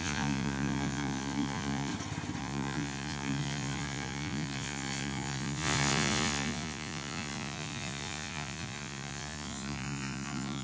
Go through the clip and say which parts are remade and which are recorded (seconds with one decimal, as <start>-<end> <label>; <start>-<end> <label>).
0.0-1.9 remade; 1.9-2.4 recorded; 2.4-10.6 remade